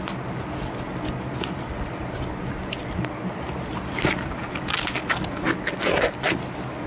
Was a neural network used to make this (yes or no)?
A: no